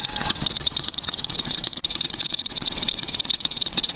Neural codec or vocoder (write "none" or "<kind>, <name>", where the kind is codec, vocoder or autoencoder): vocoder, WaveNeXt